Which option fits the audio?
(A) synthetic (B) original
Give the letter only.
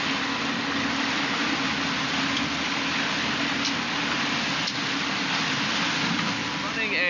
B